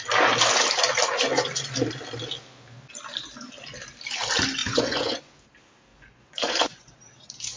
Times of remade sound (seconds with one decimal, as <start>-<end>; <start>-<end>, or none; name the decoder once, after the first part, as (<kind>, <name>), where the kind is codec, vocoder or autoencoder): 4.6-5.3 (vocoder, Vocos); 5.9-6.9

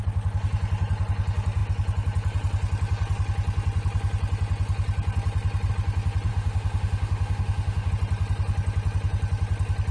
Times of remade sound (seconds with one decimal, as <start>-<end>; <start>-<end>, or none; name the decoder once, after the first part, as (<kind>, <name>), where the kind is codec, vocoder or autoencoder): 6.3-7.9 (autoencoder, DAC-VAE)

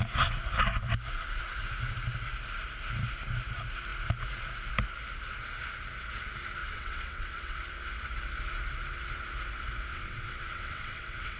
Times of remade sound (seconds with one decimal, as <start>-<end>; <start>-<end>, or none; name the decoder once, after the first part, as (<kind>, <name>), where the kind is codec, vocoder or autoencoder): 6.6-7.6 (vocoder, WaveNeXt); 9.9-11.4

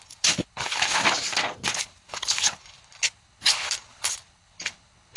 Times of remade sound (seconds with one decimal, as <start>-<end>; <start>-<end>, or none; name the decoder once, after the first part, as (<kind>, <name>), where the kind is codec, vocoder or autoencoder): 0.0-1.0 (codec, HILCodec); 1.7-5.2

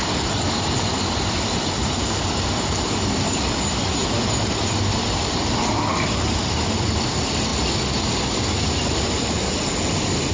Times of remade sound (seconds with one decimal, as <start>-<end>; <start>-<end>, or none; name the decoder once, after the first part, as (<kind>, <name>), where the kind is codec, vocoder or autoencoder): 0.0-2.4 (vocoder, BigVGAN v2)

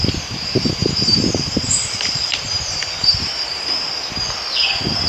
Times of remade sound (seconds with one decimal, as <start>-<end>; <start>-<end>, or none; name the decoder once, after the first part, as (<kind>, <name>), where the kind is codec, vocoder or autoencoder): 0.8-3.9 (vocoder, BigVGAN v2)

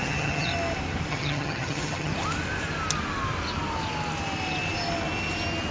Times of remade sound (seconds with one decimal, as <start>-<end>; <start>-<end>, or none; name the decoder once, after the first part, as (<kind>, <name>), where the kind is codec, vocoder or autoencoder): 0.0-0.5 (vocoder, HiFi-GAN); 1.1-2.1